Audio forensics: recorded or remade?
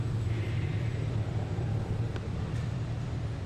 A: remade